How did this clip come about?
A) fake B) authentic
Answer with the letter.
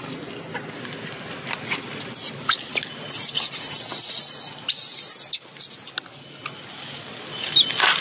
B